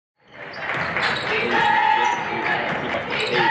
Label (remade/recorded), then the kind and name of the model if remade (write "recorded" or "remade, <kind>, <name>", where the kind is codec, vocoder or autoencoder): recorded